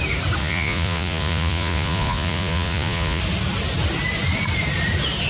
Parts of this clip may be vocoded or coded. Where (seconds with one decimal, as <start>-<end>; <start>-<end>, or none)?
0.4-3.2